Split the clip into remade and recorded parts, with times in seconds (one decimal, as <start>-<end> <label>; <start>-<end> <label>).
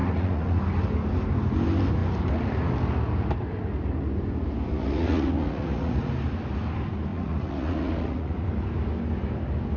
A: 0.0-0.6 remade; 0.6-4.7 recorded; 4.7-6.1 remade; 6.1-7.1 recorded; 7.1-8.5 remade; 8.5-9.8 recorded